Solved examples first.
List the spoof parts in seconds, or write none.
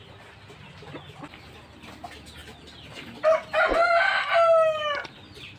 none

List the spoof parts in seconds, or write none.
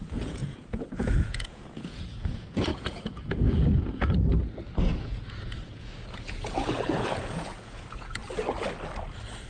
0.0-4.3 (vocoder, Vocos); 5.0-8.2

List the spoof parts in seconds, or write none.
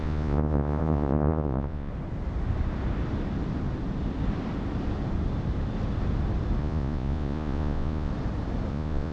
0.0-1.9 (vocoder, Vocos); 6.6-8.1; 8.7-9.1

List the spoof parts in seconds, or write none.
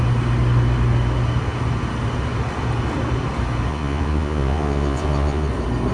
3.7-5.5 (vocoder, Vocos)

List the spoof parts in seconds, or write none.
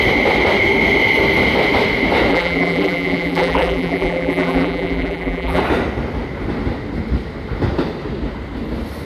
2.3-5.6 (vocoder, BigVGAN v2)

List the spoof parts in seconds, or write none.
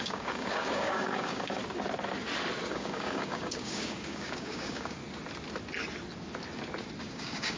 0.0-1.6 (codec, DAC); 2.7-5.0; 7.0-7.6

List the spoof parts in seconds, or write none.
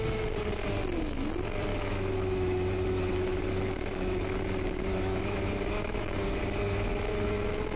1.7-6.4 (autoencoder, DAC-VAE)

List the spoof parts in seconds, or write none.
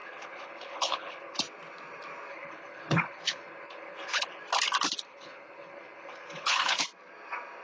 0.0-1.4 (codec, HILCodec); 2.3-4.4; 5.1-6.8